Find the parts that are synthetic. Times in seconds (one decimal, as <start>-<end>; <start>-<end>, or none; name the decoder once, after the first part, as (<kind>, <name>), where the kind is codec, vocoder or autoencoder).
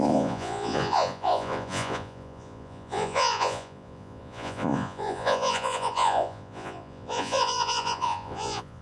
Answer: 0.0-8.8 (vocoder, Vocos)